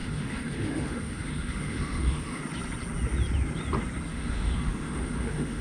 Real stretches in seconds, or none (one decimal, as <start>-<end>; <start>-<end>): 2.4-4.1